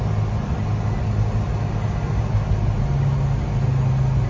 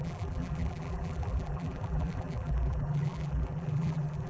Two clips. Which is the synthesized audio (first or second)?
second